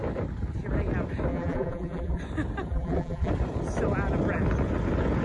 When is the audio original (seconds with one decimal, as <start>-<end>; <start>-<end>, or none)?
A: 0.0-1.3; 2.2-2.7; 3.3-5.2